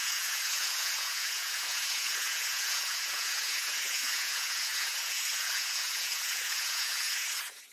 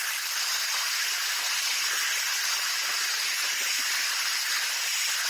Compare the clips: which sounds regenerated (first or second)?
first